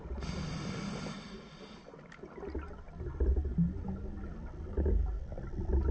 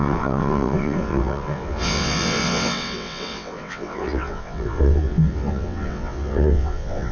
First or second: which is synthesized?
second